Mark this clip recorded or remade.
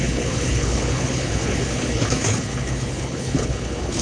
remade